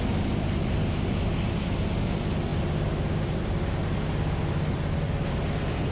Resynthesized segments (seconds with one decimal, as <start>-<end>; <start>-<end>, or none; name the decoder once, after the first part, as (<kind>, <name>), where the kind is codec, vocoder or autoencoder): 2.5-3.4 (vocoder, BigVGAN v2)